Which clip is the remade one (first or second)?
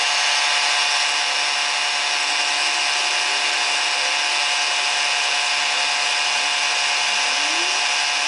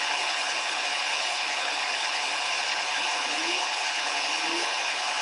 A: second